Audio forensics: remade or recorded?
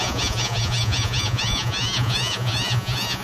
remade